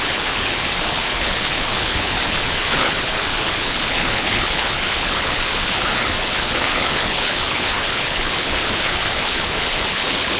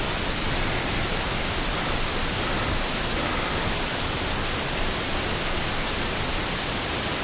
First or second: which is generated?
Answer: first